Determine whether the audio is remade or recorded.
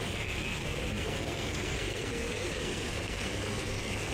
remade